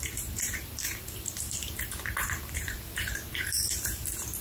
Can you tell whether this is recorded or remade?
remade